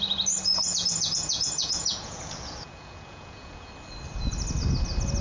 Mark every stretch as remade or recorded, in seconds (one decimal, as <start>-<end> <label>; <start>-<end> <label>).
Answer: 0.0-0.6 recorded; 0.6-3.7 remade; 3.7-5.2 recorded